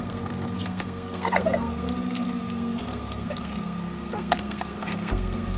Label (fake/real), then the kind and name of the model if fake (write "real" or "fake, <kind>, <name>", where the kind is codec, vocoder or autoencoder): fake, codec, SNAC